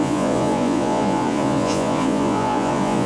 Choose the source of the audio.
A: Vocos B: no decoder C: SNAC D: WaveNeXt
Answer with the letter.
A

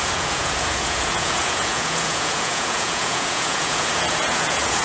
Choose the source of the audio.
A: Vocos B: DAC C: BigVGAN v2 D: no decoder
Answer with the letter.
A